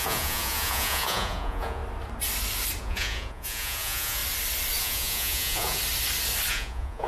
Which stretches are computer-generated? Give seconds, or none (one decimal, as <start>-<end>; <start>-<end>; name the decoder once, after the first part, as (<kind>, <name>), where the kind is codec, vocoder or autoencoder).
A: 0.0-1.8 (vocoder, Vocos); 2.8-4.2; 4.8-5.8; 6.5-7.1